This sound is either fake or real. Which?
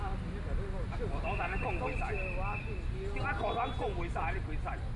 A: real